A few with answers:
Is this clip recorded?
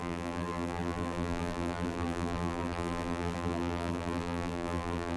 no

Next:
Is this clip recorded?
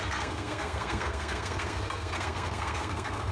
no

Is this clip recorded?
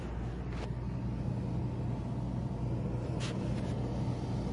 yes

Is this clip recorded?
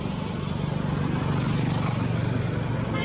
yes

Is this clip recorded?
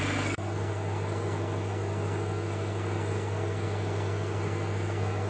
no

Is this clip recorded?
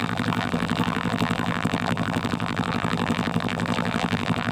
no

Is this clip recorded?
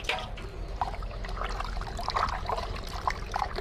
yes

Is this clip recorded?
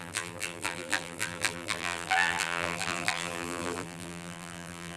no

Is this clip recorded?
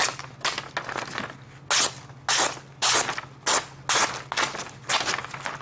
yes